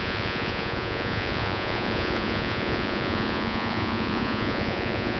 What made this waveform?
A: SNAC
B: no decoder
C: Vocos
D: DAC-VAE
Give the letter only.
C